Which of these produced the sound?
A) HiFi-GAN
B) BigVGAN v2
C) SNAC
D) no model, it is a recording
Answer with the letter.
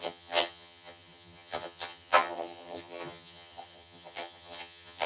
A